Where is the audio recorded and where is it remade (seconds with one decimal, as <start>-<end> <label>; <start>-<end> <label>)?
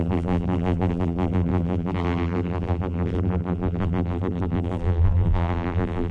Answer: 0.0-6.1 remade